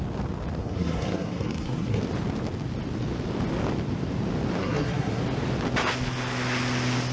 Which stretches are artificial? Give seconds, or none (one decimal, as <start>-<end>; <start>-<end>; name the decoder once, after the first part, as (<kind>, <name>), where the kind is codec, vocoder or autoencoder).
0.6-2.0 (codec, SNAC); 4.6-5.2